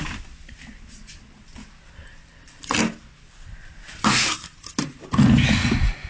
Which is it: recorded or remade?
recorded